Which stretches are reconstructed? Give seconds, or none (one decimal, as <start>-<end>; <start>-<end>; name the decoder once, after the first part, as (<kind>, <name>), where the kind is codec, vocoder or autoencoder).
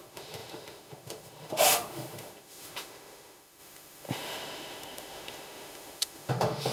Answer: 0.0-6.7 (autoencoder, DAC-VAE)